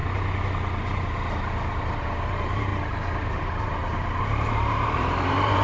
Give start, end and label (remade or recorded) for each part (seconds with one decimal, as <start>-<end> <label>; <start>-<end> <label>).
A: 0.0-2.0 recorded; 2.0-2.7 remade; 2.7-4.2 recorded; 4.2-5.6 remade